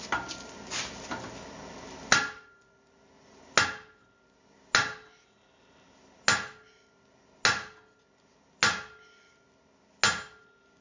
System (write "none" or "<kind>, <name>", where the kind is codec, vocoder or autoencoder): none